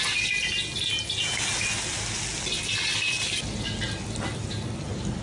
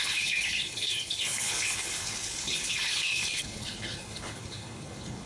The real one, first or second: first